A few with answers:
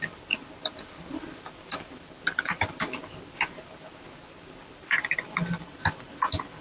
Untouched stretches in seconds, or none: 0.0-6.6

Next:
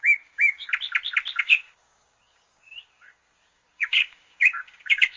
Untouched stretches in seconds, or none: 0.7-1.4

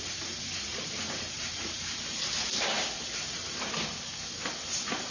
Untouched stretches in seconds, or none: 0.0-0.7; 3.6-5.1

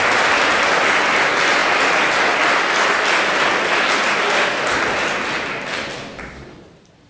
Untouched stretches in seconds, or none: 0.0-7.1

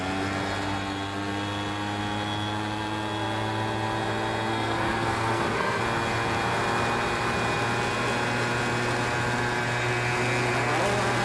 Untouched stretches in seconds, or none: 0.0-4.5; 5.8-11.2

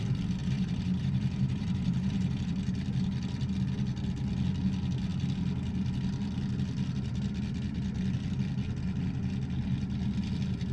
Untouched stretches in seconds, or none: 0.0-0.4; 2.5-10.7

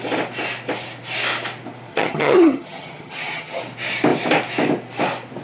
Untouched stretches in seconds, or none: 0.0-1.9; 3.6-5.4